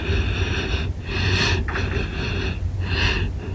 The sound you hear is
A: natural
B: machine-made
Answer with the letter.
A